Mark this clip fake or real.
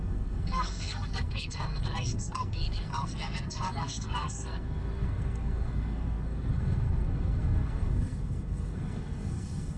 fake